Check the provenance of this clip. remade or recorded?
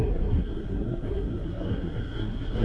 remade